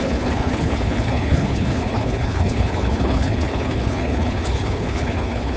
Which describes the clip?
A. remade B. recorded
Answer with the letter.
A